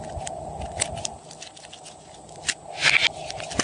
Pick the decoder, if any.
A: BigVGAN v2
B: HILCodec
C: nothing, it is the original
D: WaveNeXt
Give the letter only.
C